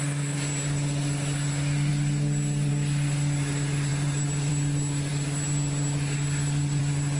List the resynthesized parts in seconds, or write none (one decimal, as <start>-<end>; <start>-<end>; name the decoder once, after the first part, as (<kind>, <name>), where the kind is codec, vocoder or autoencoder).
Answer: none